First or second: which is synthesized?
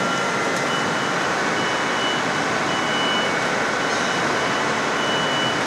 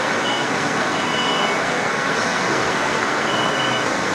second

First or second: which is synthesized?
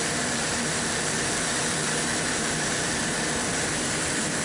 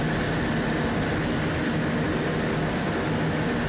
first